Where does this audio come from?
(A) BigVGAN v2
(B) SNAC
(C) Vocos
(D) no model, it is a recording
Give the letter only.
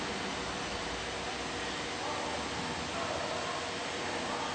D